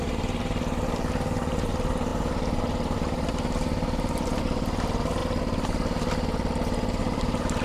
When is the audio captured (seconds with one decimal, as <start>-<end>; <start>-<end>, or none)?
5.2-7.0